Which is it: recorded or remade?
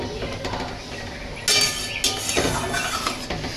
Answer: recorded